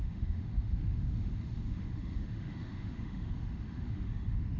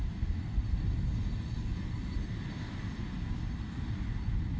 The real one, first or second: second